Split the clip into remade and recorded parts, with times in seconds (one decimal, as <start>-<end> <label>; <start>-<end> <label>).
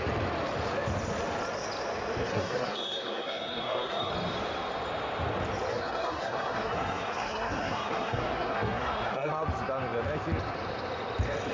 0.0-2.3 recorded; 2.3-4.1 remade; 4.1-5.7 recorded; 5.7-9.3 remade; 9.3-11.5 recorded